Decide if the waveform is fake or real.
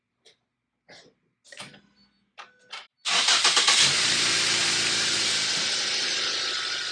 real